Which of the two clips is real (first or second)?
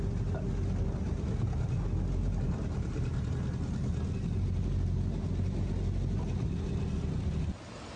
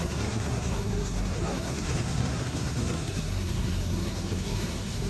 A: first